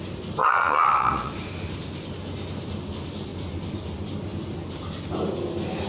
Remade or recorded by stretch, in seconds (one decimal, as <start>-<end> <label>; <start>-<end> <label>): 0.0-0.4 recorded; 0.4-1.3 remade; 1.3-5.9 recorded